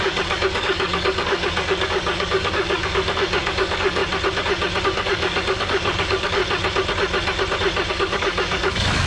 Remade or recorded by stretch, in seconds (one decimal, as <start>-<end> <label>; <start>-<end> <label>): 0.0-4.0 remade; 4.0-4.8 recorded; 4.8-6.4 remade; 6.4-7.9 recorded; 7.9-9.1 remade